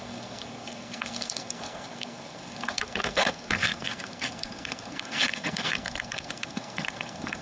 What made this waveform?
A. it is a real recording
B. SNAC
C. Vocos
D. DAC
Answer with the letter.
B